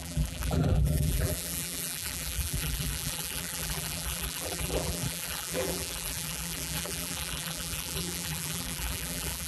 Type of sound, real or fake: fake